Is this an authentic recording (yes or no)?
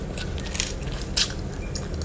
yes